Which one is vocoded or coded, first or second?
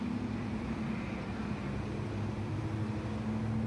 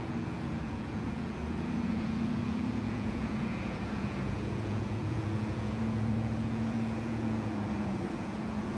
second